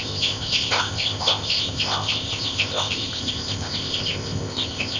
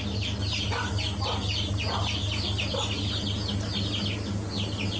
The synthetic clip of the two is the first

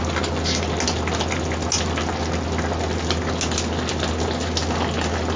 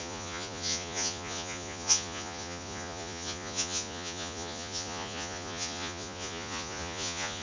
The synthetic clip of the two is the second